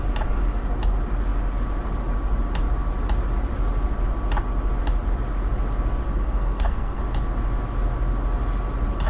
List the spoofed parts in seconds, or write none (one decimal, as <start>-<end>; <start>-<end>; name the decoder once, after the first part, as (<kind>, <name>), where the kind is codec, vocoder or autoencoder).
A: 6.1-7.0 (codec, SNAC)